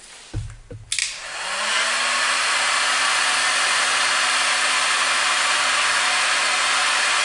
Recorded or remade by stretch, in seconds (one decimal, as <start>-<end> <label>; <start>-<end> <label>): 0.0-7.2 recorded